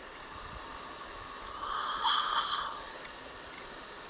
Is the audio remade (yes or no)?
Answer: no